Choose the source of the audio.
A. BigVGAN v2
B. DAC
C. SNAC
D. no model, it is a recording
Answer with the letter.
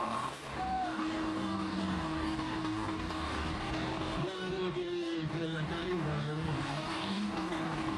B